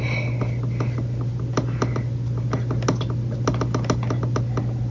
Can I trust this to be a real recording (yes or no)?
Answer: yes